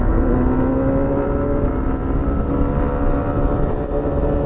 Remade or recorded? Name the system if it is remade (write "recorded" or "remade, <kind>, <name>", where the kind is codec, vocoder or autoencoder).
recorded